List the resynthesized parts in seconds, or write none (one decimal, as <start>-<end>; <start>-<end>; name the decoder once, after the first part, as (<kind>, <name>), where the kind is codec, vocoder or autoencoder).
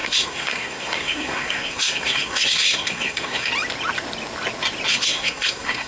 0.0-3.5 (codec, SNAC); 4.9-5.9